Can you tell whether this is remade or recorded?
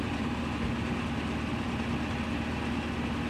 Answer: recorded